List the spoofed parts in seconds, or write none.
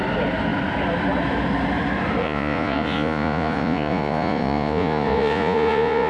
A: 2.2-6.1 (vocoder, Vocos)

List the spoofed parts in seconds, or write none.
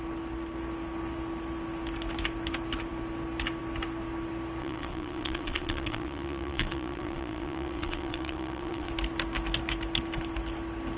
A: 4.6-8.9 (vocoder, WaveNeXt)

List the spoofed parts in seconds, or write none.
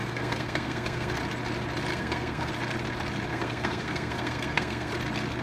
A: 0.0-1.2 (codec, SNAC); 1.9-2.5; 3.3-4.9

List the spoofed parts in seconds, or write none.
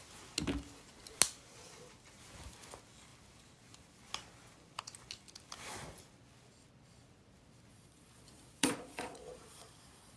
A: 7.7-10.2 (vocoder, Vocos)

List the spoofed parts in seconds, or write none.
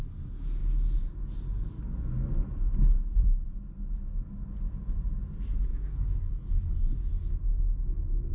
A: 5.7-6.3 (codec, DAC); 7.5-8.3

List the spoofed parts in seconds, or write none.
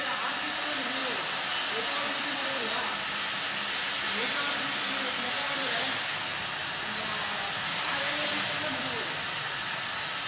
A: none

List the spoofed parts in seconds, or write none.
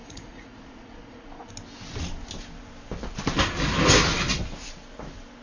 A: 0.0-1.5 (vocoder, Vocos)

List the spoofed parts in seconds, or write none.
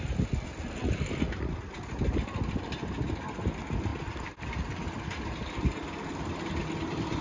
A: none